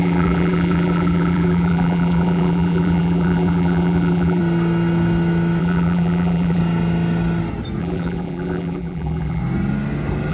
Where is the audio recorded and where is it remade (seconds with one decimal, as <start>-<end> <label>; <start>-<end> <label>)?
0.0-4.4 remade; 4.4-5.6 recorded; 5.6-6.6 remade; 6.6-7.8 recorded; 7.8-9.4 remade; 9.4-10.3 recorded